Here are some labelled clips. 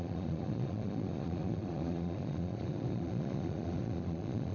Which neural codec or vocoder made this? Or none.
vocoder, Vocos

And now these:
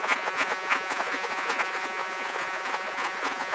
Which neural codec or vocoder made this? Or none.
vocoder, Vocos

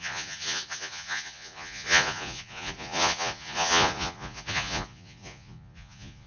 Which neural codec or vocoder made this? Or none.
vocoder, Vocos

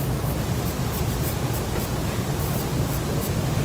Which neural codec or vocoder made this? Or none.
none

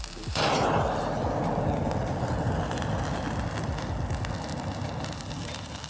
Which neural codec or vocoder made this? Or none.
none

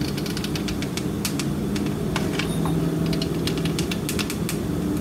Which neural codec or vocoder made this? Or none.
none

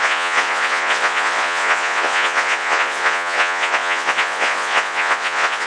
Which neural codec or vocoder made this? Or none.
vocoder, Vocos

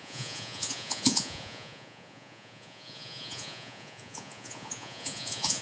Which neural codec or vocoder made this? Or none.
vocoder, Vocos